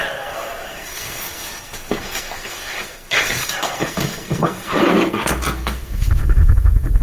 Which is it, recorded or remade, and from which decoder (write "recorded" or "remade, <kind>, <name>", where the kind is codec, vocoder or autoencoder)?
remade, codec, SNAC